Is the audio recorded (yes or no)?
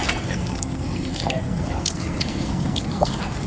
no